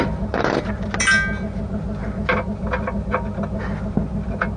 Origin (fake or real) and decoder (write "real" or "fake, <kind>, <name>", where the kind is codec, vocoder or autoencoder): real